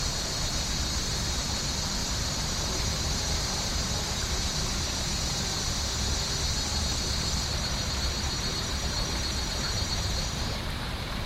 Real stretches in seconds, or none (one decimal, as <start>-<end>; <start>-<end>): 0.0-2.0; 4.3-6.7; 10.4-11.3